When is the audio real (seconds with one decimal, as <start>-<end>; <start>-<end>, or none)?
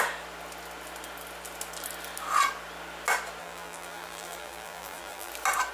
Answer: 0.0-3.4; 5.3-5.7